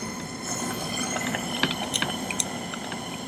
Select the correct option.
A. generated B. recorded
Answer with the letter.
B